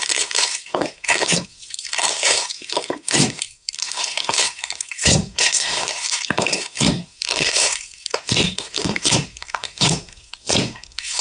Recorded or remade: remade